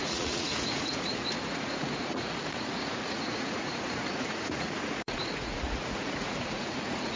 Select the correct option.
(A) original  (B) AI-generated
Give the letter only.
B